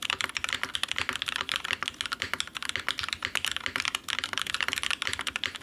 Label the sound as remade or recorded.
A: recorded